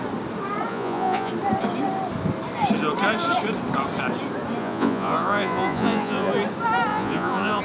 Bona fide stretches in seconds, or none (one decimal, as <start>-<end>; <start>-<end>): 0.0-0.7; 1.3-4.6; 6.3-6.9